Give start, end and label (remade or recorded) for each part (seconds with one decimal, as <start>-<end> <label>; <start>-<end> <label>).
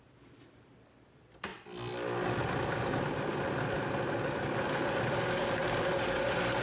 0.0-1.5 remade; 1.5-5.0 recorded; 5.0-6.6 remade